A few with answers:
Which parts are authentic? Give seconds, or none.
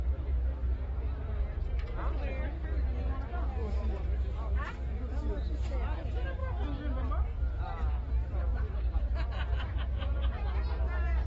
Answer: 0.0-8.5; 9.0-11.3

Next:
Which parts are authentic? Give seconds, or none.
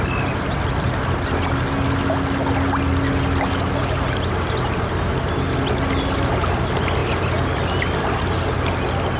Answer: 0.0-9.2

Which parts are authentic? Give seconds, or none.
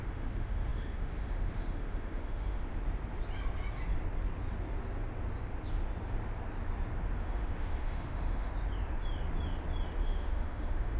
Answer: 2.7-7.2; 8.5-10.0